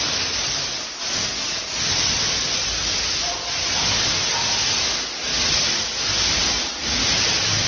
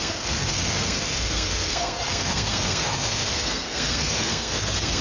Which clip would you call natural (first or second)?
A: first